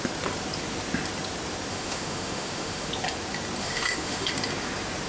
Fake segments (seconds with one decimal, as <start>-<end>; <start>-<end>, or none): 1.7-2.9; 3.6-4.3